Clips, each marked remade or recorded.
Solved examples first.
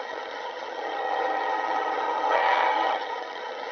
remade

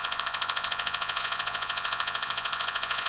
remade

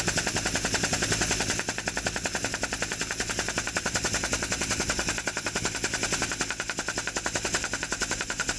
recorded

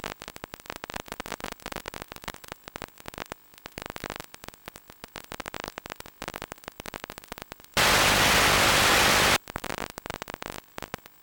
recorded